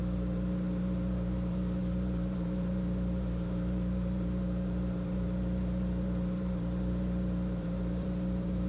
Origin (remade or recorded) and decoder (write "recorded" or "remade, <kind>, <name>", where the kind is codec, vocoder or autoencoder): remade, vocoder, BigVGAN v2